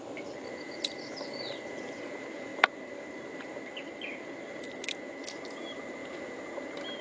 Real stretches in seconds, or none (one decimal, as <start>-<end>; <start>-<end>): 0.0-7.0